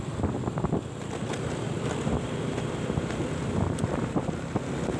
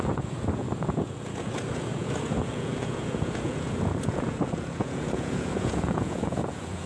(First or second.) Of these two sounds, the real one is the first